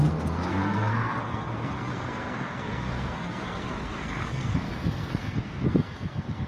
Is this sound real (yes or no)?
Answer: no